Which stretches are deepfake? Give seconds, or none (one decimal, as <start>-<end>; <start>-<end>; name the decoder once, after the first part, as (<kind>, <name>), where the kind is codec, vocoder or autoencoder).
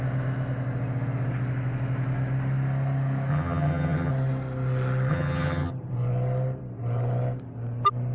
3.3-4.1 (vocoder, HiFi-GAN); 5.1-5.7